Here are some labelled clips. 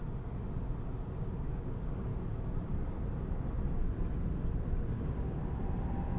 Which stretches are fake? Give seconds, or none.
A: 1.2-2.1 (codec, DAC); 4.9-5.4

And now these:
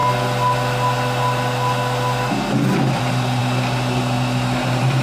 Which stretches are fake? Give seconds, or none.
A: none

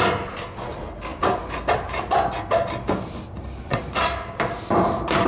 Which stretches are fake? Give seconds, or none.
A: none

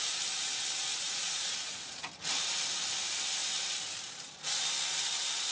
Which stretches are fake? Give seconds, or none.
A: 0.9-2.1 (vocoder, Vocos)

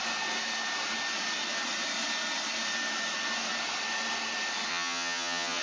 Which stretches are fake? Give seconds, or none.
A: 4.7-5.6 (vocoder, HiFi-GAN)

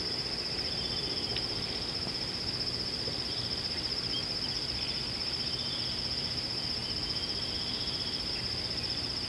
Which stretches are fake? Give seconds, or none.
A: none

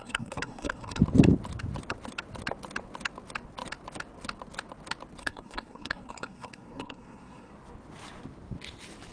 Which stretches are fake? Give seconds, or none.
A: 0.0-1.0 (codec, SNAC); 5.2-7.5